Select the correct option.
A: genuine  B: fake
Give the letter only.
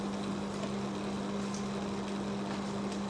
A